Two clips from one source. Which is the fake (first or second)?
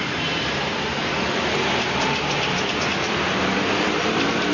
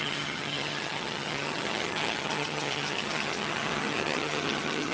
second